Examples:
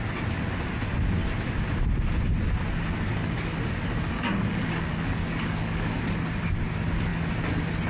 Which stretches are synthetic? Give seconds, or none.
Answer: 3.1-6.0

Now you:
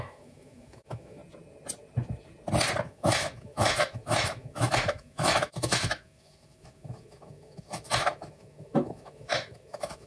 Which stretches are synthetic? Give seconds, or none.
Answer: 0.0-1.2; 2.8-10.1

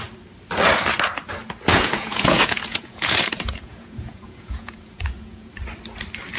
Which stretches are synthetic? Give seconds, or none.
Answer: 1.7-5.5

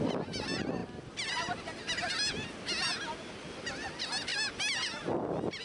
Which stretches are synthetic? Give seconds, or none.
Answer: none

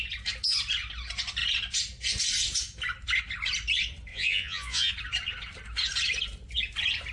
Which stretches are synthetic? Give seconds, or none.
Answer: 4.1-4.9

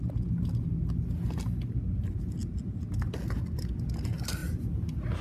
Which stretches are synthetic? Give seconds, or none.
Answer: none

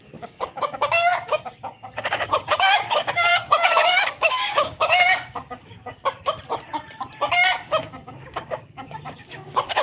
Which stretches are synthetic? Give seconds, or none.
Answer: 0.0-5.9; 7.8-9.8

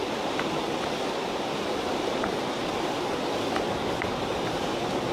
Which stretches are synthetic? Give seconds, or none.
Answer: 0.0-0.6; 1.9-3.5